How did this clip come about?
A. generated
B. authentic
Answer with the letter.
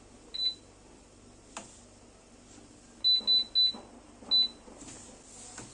B